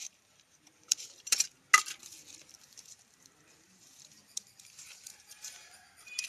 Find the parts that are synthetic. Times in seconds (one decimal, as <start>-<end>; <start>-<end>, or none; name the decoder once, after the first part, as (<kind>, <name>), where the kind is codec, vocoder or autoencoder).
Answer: 0.0-1.5 (vocoder, BigVGAN v2); 2.6-6.3